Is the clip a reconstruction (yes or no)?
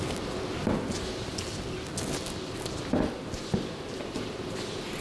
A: no